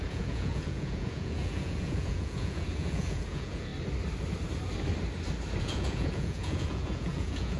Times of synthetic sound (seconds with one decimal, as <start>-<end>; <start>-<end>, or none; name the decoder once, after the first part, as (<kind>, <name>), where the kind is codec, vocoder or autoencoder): 0.0-3.7 (vocoder, Vocos); 5.6-7.6